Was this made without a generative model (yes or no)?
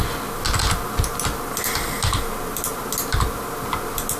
yes